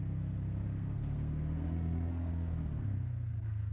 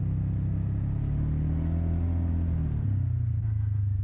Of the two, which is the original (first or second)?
second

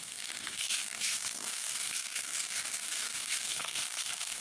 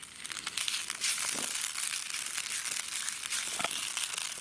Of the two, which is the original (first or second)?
second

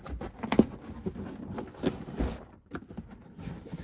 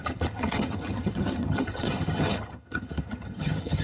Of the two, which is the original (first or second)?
first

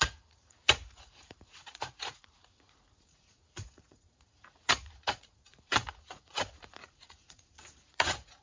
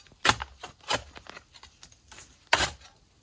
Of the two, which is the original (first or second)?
second